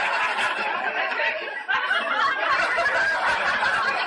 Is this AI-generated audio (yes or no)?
no